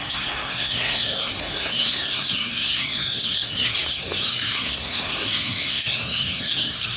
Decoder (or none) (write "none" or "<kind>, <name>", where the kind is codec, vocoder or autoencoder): codec, SNAC